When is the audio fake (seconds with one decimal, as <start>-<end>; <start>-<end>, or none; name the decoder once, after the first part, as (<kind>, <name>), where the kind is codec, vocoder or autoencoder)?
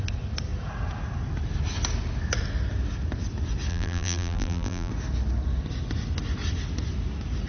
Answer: 3.7-4.9 (vocoder, BigVGAN v2)